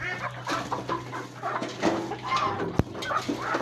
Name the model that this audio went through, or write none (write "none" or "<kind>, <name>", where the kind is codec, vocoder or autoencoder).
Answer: none